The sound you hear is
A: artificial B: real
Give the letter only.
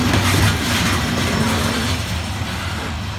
B